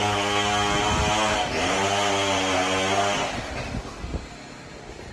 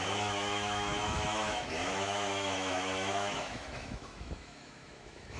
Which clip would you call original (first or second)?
first